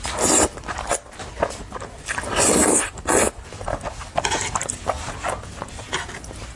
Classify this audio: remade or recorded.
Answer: recorded